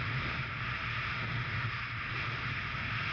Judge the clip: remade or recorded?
recorded